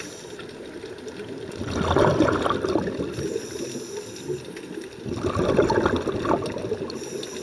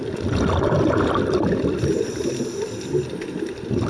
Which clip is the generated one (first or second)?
second